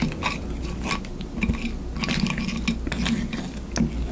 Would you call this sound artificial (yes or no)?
no